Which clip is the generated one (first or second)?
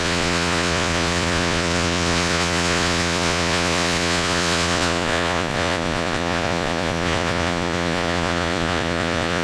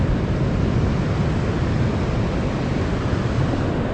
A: first